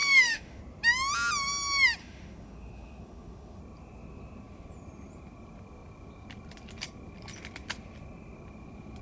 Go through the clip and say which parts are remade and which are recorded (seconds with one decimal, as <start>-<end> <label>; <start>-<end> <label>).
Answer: 0.0-0.6 remade; 0.6-2.0 recorded; 2.0-3.6 remade; 3.6-9.0 recorded